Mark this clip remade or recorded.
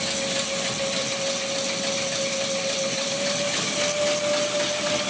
recorded